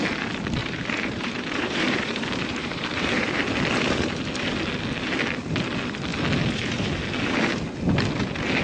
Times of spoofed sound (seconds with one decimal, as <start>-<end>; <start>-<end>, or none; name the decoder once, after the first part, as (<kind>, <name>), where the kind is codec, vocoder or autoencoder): 0.6-3.5 (vocoder, BigVGAN v2)